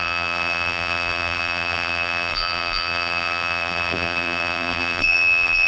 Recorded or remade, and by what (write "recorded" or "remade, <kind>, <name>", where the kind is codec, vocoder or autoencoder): remade, vocoder, BigVGAN v2